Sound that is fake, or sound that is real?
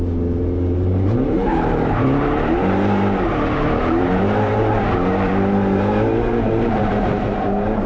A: fake